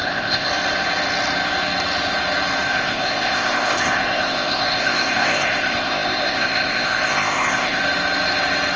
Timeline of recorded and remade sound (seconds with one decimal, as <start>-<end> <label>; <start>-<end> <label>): 0.0-0.5 remade; 0.5-2.7 recorded; 2.7-7.8 remade; 7.8-8.8 recorded